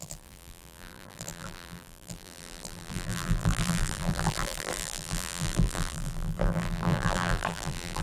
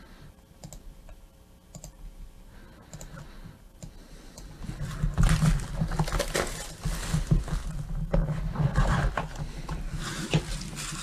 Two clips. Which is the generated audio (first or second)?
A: first